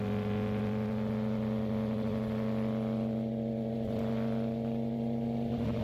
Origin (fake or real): real